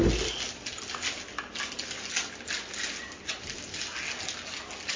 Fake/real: real